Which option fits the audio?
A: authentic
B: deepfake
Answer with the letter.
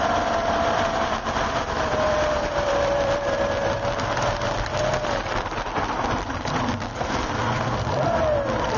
B